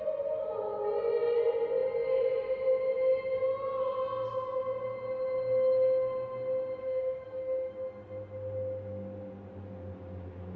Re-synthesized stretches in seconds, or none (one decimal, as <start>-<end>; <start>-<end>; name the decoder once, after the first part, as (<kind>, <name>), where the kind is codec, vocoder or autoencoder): 6.8-7.7 (codec, SNAC)